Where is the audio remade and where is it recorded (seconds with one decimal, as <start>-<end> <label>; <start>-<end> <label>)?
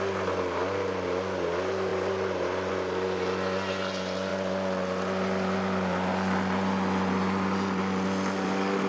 0.0-8.9 recorded